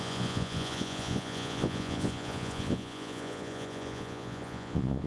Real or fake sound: fake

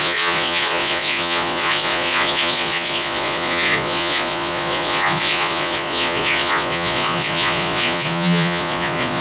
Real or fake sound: fake